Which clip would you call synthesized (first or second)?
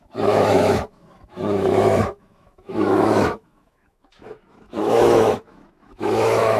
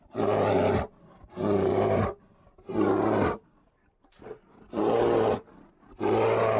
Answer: first